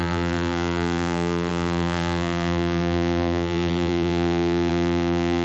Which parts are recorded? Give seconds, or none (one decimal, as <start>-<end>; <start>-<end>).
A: none